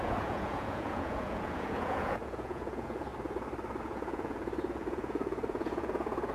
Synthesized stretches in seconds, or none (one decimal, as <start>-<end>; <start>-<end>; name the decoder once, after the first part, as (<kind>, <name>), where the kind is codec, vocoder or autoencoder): 0.0-3.1 (vocoder, Vocos); 3.8-6.3